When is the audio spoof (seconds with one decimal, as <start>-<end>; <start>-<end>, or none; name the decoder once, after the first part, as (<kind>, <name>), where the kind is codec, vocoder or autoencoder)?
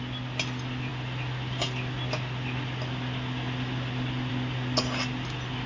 none